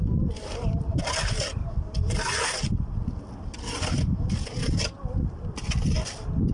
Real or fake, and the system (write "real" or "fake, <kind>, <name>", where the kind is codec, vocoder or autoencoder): real